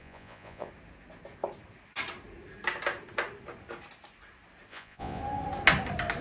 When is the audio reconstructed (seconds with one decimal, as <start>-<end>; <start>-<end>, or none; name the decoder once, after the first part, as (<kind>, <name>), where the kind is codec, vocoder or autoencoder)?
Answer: 0.0-0.7 (vocoder, Vocos); 4.7-5.2